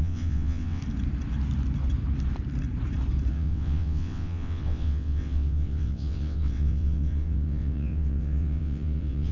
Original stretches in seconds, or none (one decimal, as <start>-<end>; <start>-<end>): 0.8-3.3